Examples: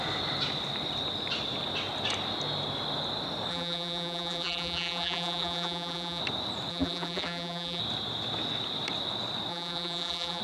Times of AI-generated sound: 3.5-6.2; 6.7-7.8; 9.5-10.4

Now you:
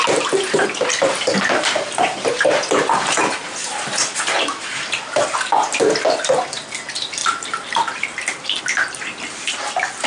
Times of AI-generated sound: 7.2-8.6

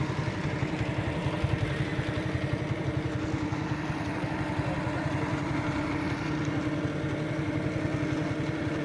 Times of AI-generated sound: 5.3-5.9

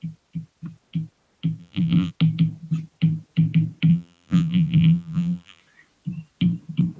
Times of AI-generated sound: 1.6-2.1; 3.9-5.6

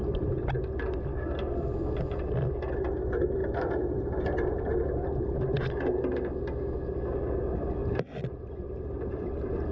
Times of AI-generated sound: 3.4-4.8; 7.8-9.7